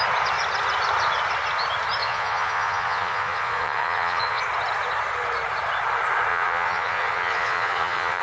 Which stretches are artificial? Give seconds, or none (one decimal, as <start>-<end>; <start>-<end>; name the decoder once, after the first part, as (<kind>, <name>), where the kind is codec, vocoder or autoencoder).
2.0-4.4 (vocoder, Vocos); 6.3-8.2